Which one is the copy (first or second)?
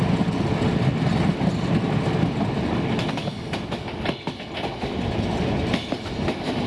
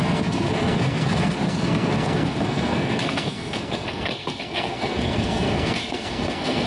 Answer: second